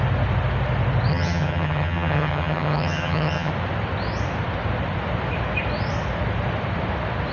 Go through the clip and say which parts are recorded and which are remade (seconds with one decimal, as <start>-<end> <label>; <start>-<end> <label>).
0.0-1.1 recorded; 1.1-3.5 remade; 3.5-7.3 recorded